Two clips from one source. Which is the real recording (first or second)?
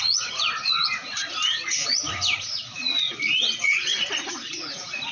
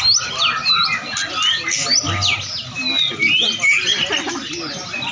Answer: second